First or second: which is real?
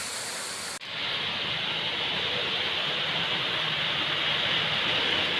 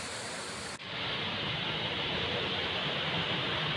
first